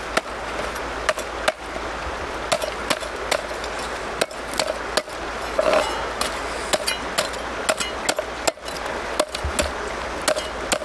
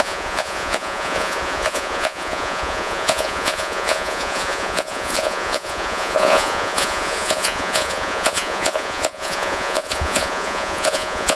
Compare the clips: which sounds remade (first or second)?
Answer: second